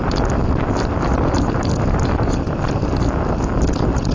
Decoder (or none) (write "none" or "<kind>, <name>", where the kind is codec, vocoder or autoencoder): none